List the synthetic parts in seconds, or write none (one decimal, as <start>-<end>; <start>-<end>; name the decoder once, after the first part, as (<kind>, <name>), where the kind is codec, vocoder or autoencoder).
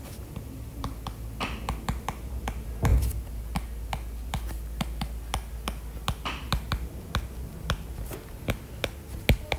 none